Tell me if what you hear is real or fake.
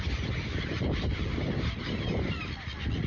fake